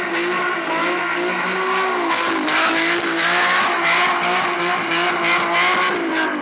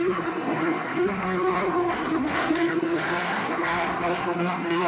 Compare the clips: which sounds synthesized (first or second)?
second